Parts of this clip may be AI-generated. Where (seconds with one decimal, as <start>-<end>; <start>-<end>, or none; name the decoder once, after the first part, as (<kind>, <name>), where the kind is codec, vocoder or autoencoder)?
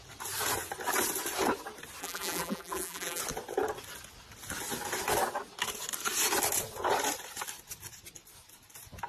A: 2.0-3.2 (vocoder, BigVGAN v2)